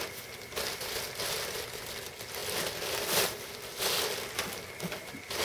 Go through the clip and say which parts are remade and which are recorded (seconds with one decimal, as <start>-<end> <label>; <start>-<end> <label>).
0.0-5.4 recorded